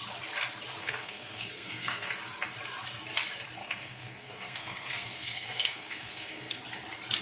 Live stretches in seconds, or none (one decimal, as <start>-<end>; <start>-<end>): 0.0-0.8; 2.1-3.6; 6.6-7.2